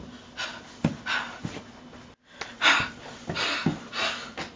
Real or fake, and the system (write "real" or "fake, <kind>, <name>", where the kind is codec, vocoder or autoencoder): real